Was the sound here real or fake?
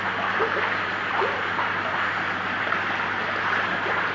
real